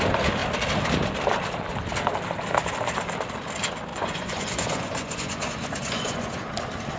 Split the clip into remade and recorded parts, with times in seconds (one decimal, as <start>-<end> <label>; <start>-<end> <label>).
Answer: 0.0-3.9 recorded; 3.9-6.4 remade; 6.4-7.0 recorded